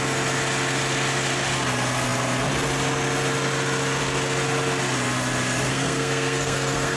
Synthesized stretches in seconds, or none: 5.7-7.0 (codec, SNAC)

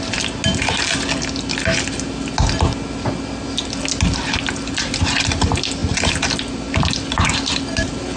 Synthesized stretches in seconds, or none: none

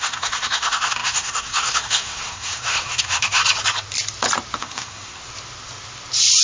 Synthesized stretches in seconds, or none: 0.0-3.4 (codec, SNAC); 4.6-5.2